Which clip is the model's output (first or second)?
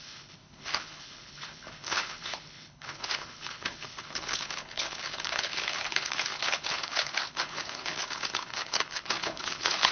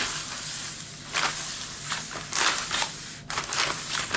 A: first